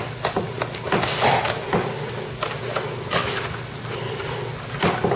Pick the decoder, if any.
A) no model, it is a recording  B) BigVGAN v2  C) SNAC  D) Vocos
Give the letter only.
A